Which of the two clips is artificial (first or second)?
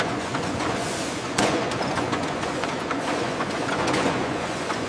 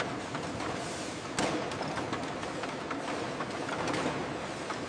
first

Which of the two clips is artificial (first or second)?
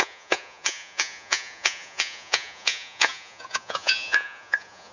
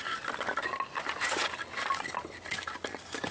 first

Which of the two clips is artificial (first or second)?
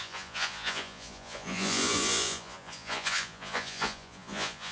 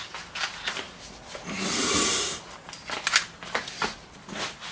first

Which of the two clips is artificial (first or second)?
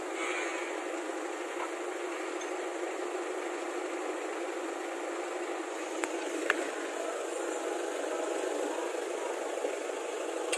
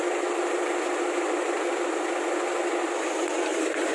first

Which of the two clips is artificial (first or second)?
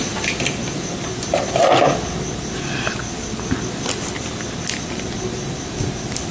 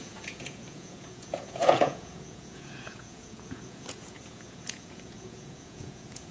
second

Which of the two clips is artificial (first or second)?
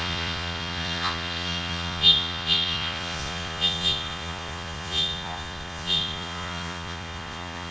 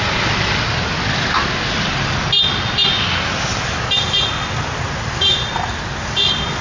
first